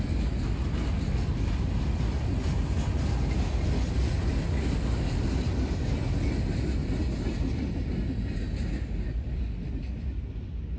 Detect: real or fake real